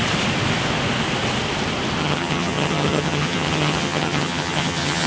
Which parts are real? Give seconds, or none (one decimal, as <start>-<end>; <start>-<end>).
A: 0.0-2.0